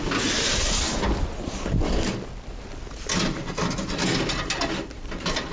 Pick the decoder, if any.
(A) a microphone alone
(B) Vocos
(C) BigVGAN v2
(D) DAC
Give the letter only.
A